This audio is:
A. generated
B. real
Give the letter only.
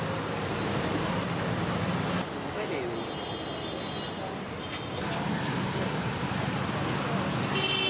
B